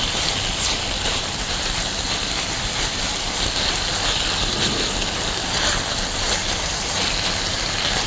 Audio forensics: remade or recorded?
recorded